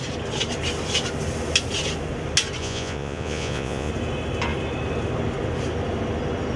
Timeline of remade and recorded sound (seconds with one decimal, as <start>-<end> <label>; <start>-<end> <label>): 0.0-2.6 recorded; 2.6-3.9 remade; 3.9-6.6 recorded